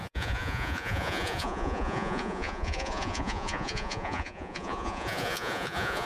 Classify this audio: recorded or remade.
remade